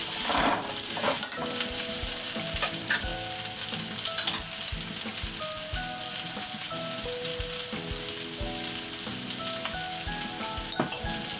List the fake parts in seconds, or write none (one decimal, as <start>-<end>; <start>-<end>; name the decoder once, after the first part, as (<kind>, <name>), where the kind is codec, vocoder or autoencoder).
0.0-3.1 (vocoder, BigVGAN v2); 6.1-7.3; 10.9-11.4